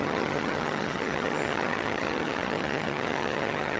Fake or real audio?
fake